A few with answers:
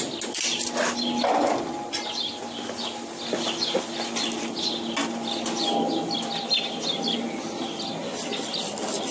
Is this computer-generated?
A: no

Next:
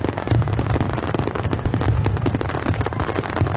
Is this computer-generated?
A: no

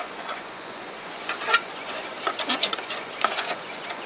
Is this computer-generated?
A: yes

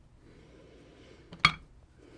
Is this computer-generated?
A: no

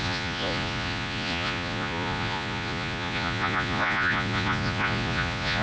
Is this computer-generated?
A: yes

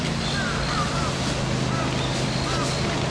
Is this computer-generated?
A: no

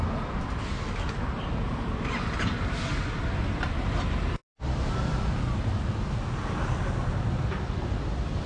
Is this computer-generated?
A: no